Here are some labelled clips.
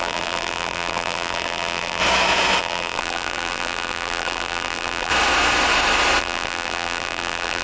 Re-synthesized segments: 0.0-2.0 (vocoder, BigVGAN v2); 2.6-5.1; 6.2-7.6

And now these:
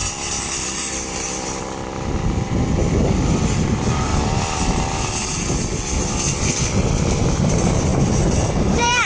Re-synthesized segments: 0.9-4.1 (vocoder, BigVGAN v2); 7.2-9.0

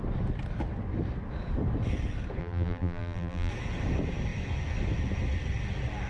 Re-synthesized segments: 2.4-3.5 (vocoder, BigVGAN v2)

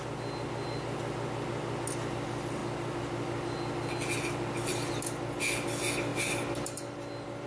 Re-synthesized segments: none

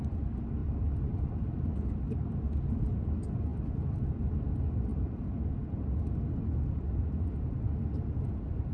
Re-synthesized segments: 4.9-5.5 (vocoder, BigVGAN v2)

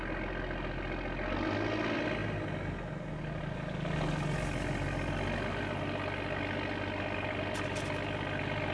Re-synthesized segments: none

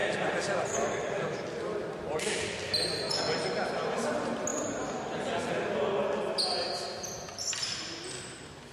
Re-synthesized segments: none

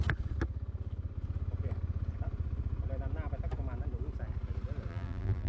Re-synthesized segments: 4.9-5.5 (vocoder, BigVGAN v2)